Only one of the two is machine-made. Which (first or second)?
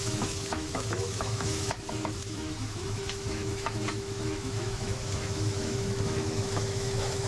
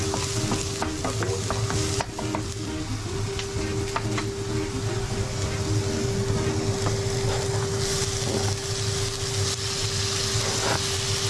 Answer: first